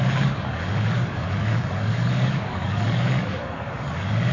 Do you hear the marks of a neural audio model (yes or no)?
yes